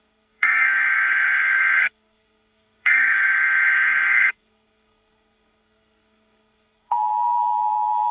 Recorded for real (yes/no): no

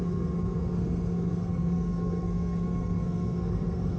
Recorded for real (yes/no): no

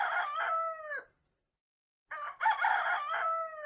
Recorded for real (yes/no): yes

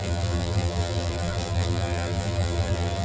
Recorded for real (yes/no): no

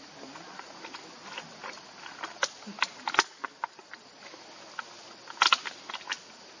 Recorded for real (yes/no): yes